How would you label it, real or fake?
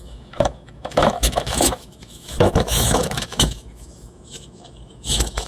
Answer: fake